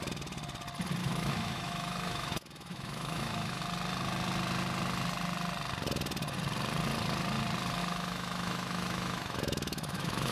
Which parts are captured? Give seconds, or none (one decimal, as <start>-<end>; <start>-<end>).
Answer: 0.0-1.0; 3.6-7.8